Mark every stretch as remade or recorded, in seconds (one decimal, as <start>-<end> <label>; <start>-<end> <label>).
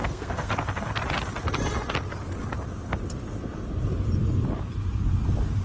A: 0.0-0.5 remade; 0.5-5.6 recorded